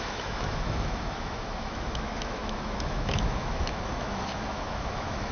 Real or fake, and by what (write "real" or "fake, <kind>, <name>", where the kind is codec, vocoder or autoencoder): fake, autoencoder, DAC-VAE